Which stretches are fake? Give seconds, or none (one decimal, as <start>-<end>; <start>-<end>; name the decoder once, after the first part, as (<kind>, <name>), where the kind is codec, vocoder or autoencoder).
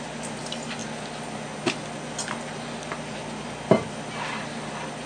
none